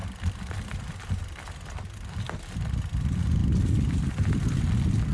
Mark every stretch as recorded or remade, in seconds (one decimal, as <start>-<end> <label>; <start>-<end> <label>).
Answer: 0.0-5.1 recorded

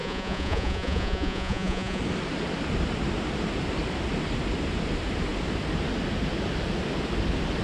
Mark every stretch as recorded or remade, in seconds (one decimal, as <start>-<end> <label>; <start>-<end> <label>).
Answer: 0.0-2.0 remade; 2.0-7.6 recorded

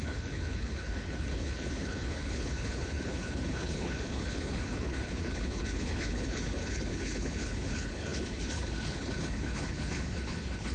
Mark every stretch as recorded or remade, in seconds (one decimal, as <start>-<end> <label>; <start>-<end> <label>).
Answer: 0.0-10.7 remade